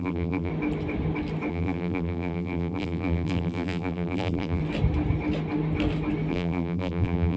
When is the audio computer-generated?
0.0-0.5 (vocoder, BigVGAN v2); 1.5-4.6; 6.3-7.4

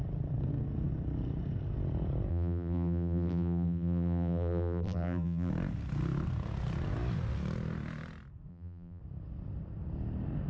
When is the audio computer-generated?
2.3-5.5 (vocoder, BigVGAN v2); 8.5-9.0

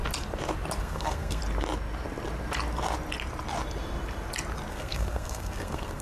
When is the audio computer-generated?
0.8-1.4 (codec, SNAC); 4.7-6.0

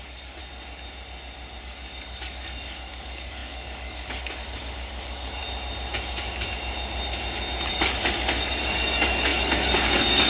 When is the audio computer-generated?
0.0-0.4 (codec, DAC); 1.6-5.4; 7.7-10.3

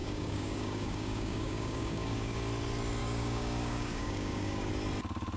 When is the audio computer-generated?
0.0-2.4 (codec, DAC); 3.0-4.7